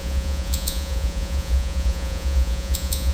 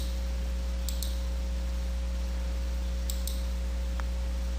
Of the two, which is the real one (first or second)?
second